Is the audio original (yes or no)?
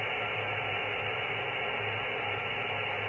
yes